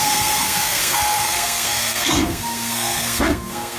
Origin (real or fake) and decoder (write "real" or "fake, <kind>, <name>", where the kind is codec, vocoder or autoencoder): fake, codec, SNAC